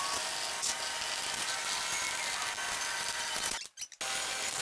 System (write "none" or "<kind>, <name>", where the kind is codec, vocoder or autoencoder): none